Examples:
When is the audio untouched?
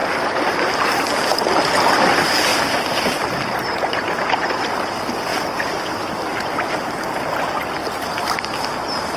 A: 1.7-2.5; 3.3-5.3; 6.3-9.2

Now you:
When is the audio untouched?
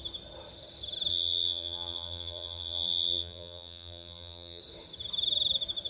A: 0.0-1.1; 4.6-5.9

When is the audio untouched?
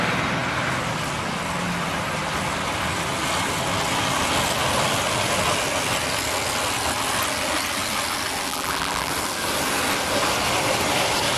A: 0.0-8.5; 9.1-11.4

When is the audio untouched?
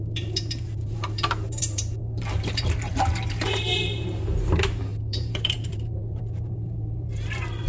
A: none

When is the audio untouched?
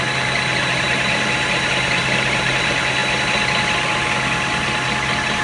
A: 0.0-5.4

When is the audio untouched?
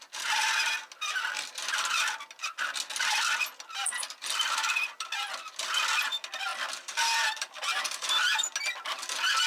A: 0.0-6.5; 8.1-9.5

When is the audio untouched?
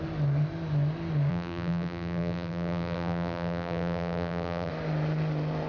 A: 0.0-1.3; 4.7-5.7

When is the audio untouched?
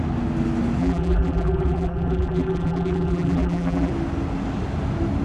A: 0.0-0.8; 3.9-5.2